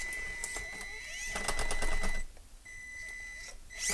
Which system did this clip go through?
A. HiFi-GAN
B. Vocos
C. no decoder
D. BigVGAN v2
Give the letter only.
C